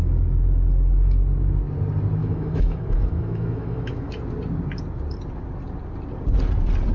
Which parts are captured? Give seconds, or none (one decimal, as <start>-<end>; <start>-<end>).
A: 0.0-2.2; 4.2-6.9